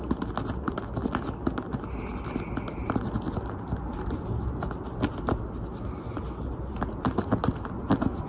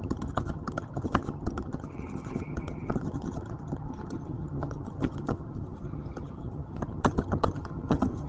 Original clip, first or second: first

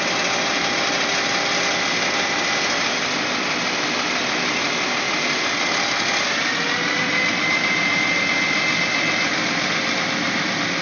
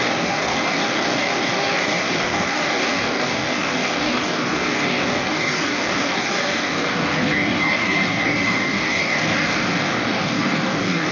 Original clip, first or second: first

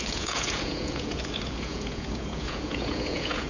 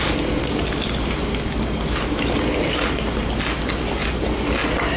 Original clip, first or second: second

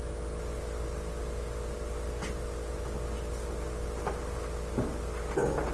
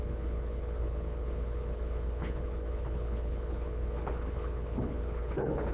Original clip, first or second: first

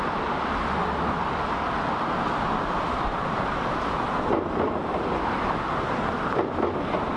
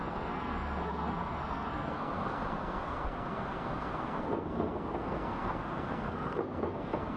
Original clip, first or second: first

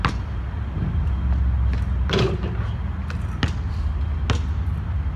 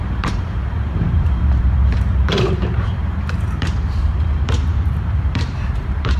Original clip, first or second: first